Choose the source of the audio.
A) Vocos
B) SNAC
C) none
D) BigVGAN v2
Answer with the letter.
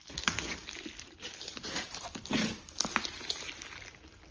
C